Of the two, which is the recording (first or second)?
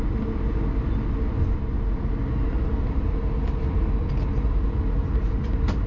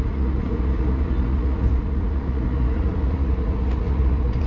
first